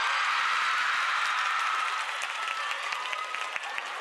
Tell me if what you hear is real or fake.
real